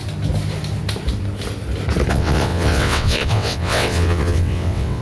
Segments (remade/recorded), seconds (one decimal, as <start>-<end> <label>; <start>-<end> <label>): 0.0-2.1 recorded; 2.1-5.0 remade